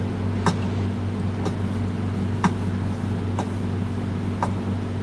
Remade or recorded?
recorded